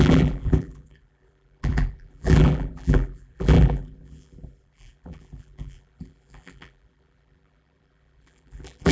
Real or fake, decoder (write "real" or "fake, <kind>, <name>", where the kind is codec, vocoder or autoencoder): fake, vocoder, BigVGAN v2